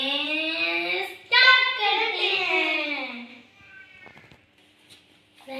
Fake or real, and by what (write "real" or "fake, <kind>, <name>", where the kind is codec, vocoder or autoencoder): real